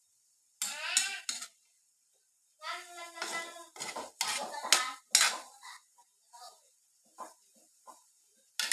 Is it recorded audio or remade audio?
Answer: recorded